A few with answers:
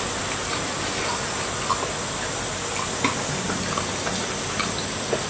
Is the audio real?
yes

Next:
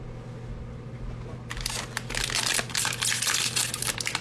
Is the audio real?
yes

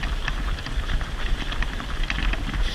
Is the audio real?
yes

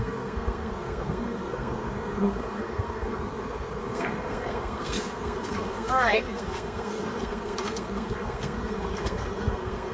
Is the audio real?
no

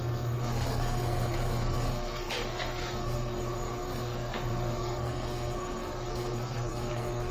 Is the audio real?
no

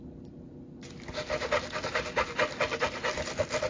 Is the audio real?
yes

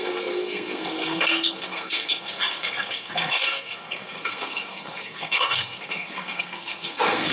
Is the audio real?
no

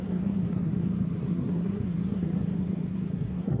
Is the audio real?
no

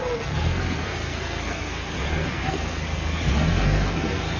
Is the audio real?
no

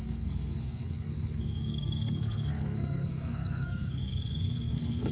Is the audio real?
no